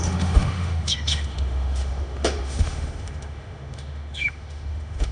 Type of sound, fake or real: fake